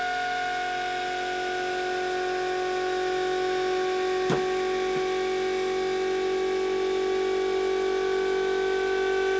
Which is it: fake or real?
real